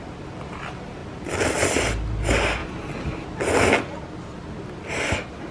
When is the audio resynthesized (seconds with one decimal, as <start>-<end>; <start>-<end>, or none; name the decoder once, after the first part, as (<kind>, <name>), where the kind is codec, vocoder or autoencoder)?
none